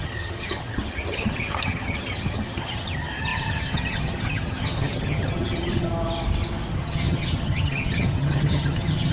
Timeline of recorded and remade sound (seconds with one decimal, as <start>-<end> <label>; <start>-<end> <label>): 0.0-5.9 remade; 5.9-6.7 recorded; 6.7-9.1 remade